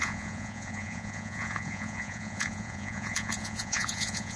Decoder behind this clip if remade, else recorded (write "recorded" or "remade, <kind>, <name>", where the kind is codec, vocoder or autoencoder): remade, vocoder, Vocos